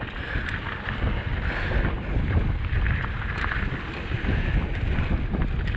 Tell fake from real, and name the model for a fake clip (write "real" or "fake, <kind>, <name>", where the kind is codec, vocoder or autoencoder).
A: real